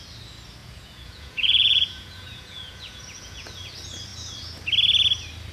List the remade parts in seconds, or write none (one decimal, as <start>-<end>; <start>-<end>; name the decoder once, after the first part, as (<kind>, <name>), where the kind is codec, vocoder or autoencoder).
0.6-3.5 (vocoder, Vocos)